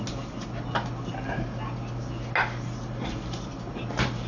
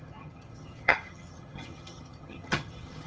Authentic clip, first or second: first